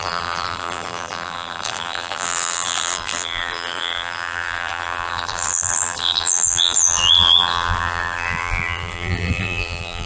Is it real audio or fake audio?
fake